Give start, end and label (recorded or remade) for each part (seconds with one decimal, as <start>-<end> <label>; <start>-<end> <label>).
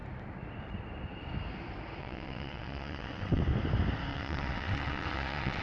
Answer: 0.0-2.0 recorded; 2.0-3.4 remade; 3.4-4.1 recorded; 4.1-5.6 remade